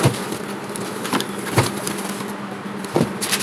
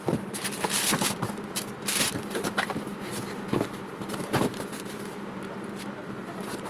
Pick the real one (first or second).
first